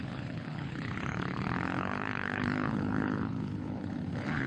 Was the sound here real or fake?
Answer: fake